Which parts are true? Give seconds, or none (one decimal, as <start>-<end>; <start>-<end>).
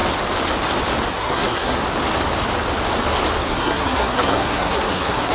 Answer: 0.0-1.1; 1.8-3.4